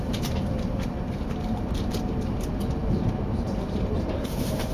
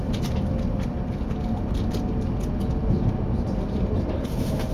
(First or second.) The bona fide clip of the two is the second